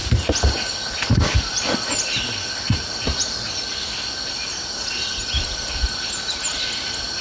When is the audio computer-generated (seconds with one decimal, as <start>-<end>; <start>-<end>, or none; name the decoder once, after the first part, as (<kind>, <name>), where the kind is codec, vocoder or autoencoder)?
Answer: none